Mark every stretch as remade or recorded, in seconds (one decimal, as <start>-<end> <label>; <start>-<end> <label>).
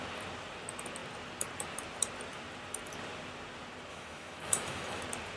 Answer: 0.0-3.9 recorded; 3.9-5.0 remade; 5.0-5.4 recorded